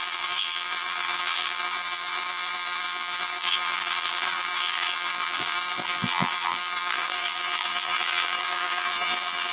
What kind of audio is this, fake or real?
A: fake